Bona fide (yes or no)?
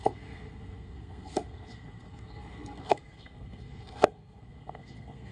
no